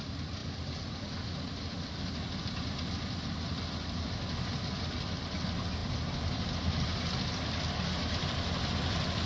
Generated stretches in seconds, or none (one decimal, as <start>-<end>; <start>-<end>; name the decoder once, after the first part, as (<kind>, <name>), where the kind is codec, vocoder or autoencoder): none